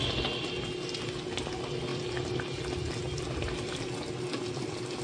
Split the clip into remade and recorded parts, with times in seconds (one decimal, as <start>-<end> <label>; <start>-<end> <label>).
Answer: 0.0-5.0 recorded

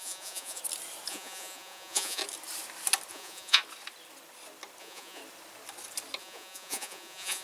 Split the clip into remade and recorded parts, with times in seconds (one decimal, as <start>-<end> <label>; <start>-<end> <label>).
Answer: 0.0-0.6 remade; 0.6-1.1 recorded; 1.1-2.2 remade; 2.2-3.1 recorded; 3.1-3.6 remade; 3.6-4.8 recorded; 4.8-5.2 remade; 5.2-6.2 recorded; 6.2-7.4 remade

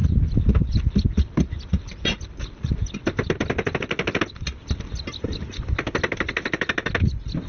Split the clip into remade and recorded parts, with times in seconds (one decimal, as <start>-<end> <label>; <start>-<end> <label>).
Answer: 0.0-7.5 recorded

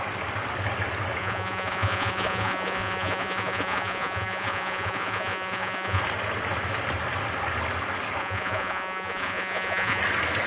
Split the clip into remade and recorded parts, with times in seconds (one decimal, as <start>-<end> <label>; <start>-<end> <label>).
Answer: 0.0-1.2 recorded; 1.2-6.0 remade; 6.0-8.2 recorded; 8.2-10.0 remade; 10.0-10.5 recorded

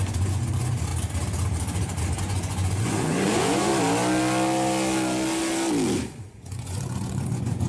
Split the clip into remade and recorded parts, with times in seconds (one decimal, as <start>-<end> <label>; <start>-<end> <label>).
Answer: 0.0-0.9 remade; 0.9-2.2 recorded; 2.2-3.7 remade; 3.7-6.2 recorded; 6.2-7.7 remade

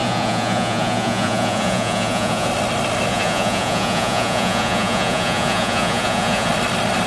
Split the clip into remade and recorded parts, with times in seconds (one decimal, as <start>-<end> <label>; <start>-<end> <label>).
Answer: 0.0-2.5 remade; 2.5-3.1 recorded; 3.1-6.5 remade; 6.5-7.1 recorded